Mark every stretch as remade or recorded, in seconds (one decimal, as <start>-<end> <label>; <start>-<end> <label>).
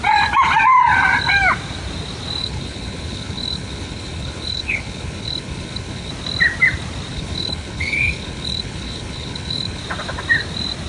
0.0-2.4 recorded; 2.4-6.1 remade; 6.1-7.1 recorded; 7.1-9.8 remade; 9.8-10.9 recorded